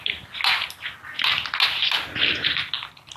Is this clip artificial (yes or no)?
no